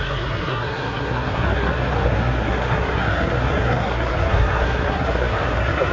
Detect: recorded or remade remade